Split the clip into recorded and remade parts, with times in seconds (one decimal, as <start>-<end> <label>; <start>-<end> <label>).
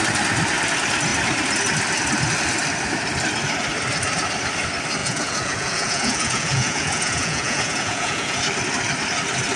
0.0-5.0 recorded; 5.0-8.4 remade; 8.4-9.6 recorded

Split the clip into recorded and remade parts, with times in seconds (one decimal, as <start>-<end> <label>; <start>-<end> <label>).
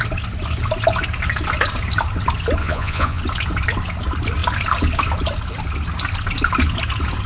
0.0-2.6 recorded; 2.6-3.2 remade; 3.2-7.3 recorded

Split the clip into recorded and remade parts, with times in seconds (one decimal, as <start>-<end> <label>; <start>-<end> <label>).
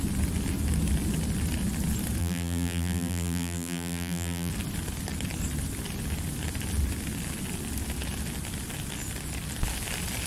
0.0-2.2 recorded; 2.2-4.5 remade; 4.5-10.3 recorded